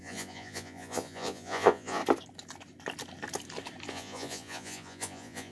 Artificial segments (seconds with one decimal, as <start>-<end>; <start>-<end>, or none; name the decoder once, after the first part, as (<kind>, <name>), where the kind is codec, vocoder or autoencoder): 0.0-2.0 (vocoder, Vocos); 3.9-5.5